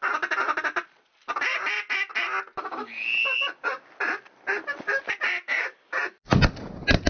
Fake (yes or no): no